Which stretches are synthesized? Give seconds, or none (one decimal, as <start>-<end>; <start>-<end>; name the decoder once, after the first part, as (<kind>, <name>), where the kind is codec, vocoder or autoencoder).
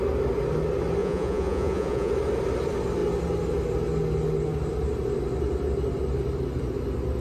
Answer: 1.0-2.1 (vocoder, Vocos)